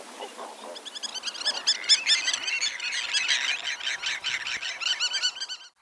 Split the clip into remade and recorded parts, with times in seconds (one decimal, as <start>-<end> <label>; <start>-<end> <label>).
0.0-5.8 recorded

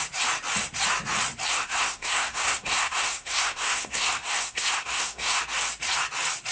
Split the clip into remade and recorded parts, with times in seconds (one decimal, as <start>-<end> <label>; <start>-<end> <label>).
0.0-1.5 recorded; 1.5-5.4 remade; 5.4-6.5 recorded

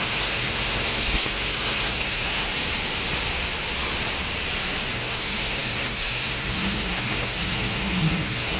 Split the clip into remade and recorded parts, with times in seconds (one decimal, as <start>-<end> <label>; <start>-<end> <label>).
0.0-2.5 remade; 2.5-4.9 recorded; 4.9-8.6 remade

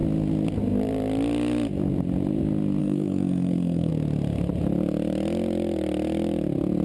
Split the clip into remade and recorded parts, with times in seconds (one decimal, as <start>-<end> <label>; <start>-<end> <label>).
0.0-2.8 recorded; 2.8-3.9 remade; 3.9-6.8 recorded

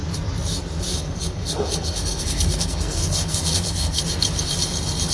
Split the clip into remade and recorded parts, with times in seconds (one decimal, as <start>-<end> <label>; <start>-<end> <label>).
0.0-0.9 recorded; 0.9-4.0 remade; 4.0-5.1 recorded

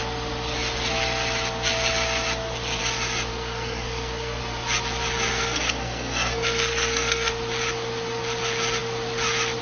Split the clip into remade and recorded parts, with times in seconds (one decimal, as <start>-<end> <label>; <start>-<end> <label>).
0.0-3.3 recorded; 3.3-4.4 remade; 4.4-5.3 recorded; 5.3-7.3 remade; 7.3-9.6 recorded